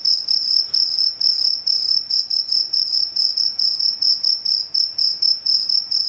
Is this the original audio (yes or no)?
no